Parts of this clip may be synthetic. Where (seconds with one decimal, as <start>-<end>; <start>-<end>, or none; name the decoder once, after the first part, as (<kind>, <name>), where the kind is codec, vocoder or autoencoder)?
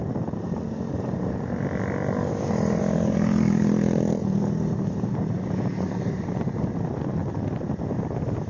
2.8-4.2 (vocoder, BigVGAN v2); 4.7-7.2; 7.8-8.5